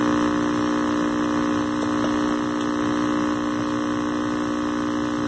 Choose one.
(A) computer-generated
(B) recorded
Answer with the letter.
B